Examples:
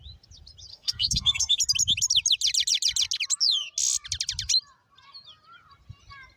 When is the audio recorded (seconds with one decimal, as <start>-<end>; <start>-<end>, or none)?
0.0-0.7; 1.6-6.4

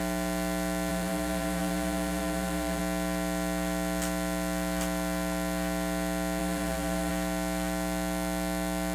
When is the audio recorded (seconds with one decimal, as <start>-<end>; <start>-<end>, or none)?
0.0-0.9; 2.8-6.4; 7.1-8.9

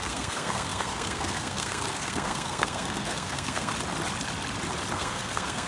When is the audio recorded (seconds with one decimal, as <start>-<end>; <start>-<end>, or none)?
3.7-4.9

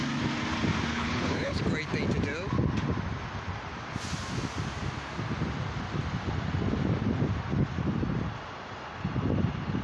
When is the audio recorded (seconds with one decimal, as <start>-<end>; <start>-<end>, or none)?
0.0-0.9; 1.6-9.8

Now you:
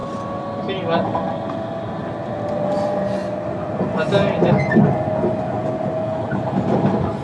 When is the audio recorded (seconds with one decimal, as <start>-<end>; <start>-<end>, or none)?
0.0-7.2

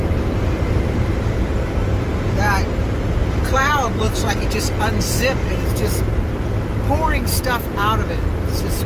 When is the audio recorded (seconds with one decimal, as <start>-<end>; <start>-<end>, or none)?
0.0-1.8; 4.6-8.9

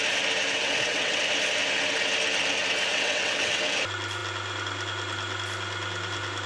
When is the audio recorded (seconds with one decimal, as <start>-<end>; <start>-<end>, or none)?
0.0-0.6; 1.2-2.9; 3.6-6.5